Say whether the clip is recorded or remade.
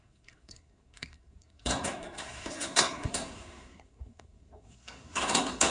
remade